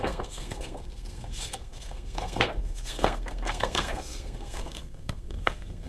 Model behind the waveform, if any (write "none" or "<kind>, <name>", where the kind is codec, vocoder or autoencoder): codec, SNAC